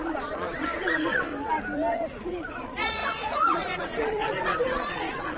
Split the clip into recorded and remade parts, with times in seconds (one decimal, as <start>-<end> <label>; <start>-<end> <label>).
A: 0.0-1.3 remade; 1.3-1.9 recorded; 1.9-5.4 remade